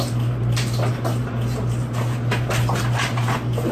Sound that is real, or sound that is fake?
real